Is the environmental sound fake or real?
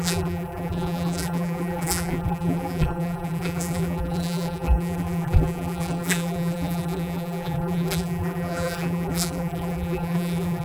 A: fake